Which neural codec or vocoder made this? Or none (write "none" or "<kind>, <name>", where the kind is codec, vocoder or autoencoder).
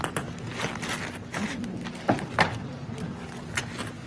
none